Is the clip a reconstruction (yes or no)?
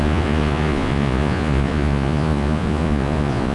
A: yes